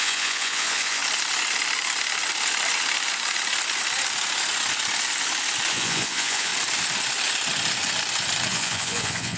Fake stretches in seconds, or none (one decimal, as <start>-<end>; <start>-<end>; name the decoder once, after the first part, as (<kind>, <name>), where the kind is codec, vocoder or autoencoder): 0.0-1.0 (vocoder, Vocos); 5.7-6.5; 8.5-9.4